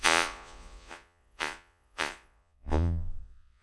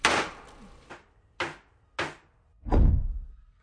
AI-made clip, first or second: first